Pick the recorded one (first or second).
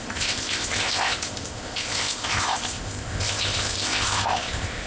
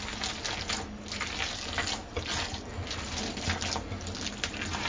second